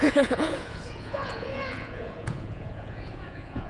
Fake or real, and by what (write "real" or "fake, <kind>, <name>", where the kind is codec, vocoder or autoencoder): fake, vocoder, Vocos